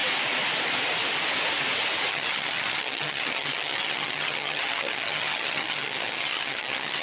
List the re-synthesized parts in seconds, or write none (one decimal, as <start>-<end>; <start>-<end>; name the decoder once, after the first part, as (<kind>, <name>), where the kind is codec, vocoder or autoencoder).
2.1-7.0 (vocoder, HiFi-GAN)